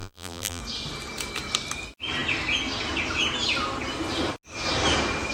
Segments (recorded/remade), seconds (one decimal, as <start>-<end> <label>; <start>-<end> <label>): 0.0-0.6 remade; 0.6-5.3 recorded